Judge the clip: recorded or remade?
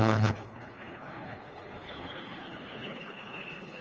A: remade